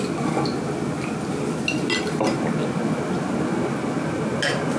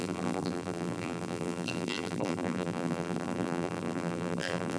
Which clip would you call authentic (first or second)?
first